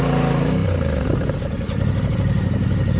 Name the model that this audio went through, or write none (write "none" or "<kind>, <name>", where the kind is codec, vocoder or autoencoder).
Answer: none